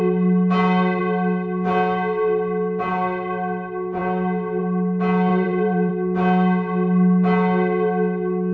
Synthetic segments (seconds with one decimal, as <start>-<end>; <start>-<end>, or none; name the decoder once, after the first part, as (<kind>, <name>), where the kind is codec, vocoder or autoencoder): 5.3-5.9 (vocoder, BigVGAN v2)

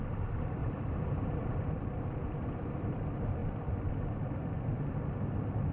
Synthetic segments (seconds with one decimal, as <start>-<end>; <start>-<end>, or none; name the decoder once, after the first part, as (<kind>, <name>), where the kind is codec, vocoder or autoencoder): 0.6-2.9 (vocoder, BigVGAN v2)

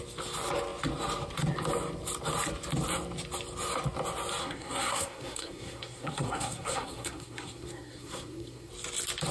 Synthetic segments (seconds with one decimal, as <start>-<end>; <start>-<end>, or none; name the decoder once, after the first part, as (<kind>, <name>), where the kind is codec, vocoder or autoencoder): 4.4-8.7 (codec, SNAC)